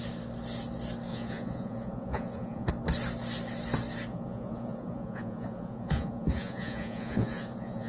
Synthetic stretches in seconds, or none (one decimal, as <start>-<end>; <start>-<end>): 1.1-2.7; 4.1-7.9